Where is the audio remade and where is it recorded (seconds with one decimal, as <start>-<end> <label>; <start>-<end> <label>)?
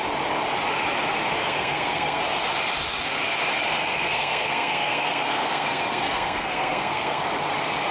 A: 0.0-1.4 recorded; 1.4-2.2 remade; 2.2-3.9 recorded; 3.9-7.2 remade; 7.2-7.9 recorded